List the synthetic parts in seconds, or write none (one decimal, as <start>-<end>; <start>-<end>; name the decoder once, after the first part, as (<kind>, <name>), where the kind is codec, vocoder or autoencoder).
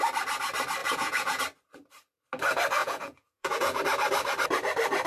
0.8-1.4 (vocoder, Vocos); 2.8-3.8